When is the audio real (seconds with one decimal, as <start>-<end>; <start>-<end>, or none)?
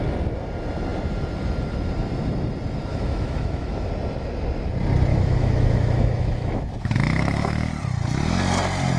0.0-2.9; 3.9-5.1; 7.7-9.0